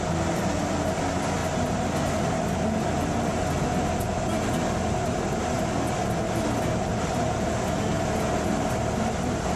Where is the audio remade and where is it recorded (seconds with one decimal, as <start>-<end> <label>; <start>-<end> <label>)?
0.0-9.6 recorded